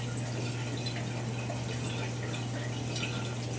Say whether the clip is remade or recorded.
recorded